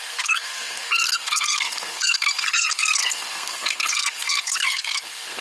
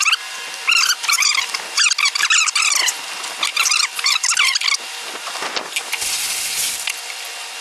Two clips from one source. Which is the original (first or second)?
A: second